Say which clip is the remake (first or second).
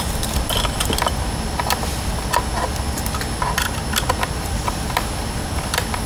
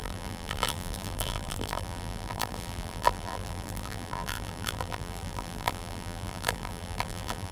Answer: second